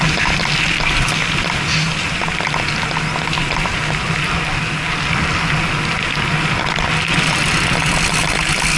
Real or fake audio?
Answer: real